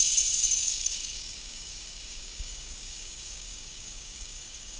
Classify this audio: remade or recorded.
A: remade